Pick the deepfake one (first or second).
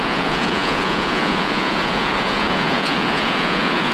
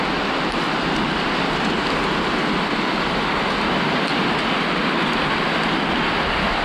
first